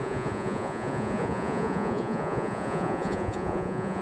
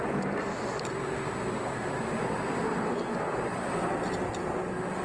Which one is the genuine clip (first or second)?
second